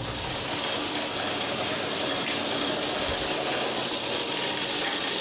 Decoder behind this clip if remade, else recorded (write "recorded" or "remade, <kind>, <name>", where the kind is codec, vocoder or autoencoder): recorded